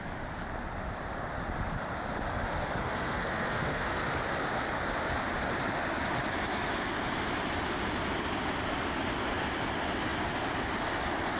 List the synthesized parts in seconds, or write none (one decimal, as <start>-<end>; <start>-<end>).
2.8-4.0